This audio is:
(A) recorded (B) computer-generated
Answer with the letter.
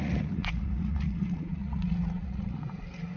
B